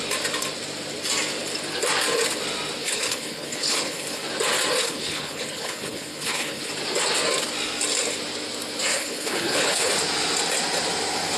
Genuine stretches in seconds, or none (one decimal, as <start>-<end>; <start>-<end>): 0.0-2.8; 4.3-4.8; 6.7-8.9; 9.9-11.4